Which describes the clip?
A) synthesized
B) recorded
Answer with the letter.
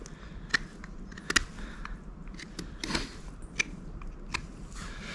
B